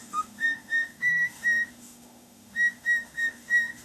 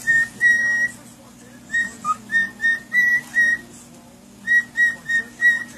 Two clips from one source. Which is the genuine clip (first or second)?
second